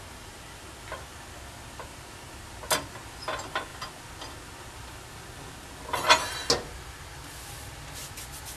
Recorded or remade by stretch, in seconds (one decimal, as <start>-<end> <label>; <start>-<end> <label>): 0.0-8.6 recorded